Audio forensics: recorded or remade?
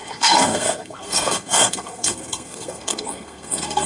remade